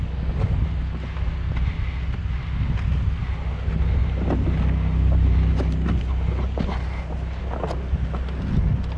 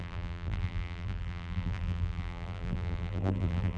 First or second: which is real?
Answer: first